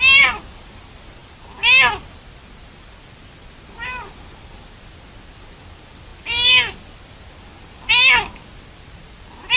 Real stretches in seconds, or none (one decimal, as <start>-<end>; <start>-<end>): 0.0-9.6